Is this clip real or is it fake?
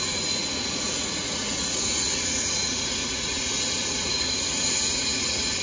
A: fake